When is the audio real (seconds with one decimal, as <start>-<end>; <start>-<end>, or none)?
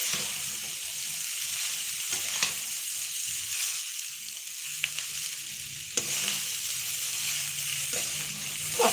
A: 0.0-2.8; 4.9-8.9